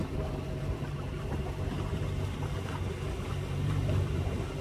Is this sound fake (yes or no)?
yes